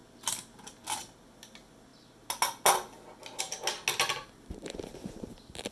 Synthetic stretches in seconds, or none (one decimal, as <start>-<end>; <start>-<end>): none